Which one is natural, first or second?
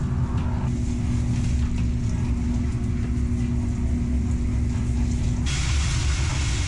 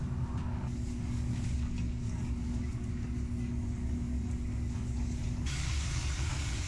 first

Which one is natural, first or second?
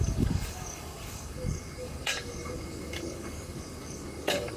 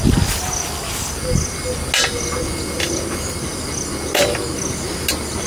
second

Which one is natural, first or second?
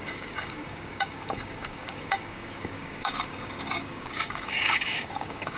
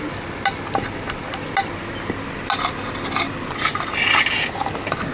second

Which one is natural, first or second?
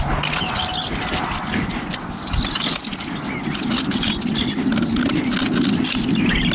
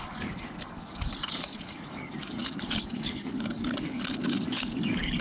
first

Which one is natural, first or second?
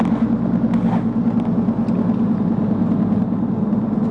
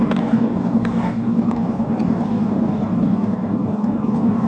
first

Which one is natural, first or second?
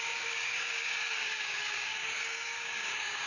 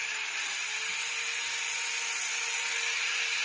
second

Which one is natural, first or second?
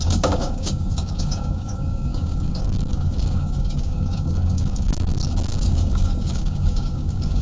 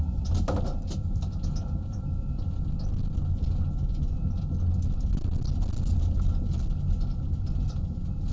second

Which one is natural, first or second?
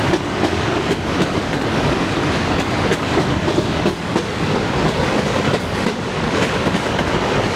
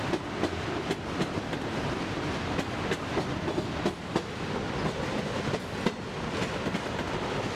second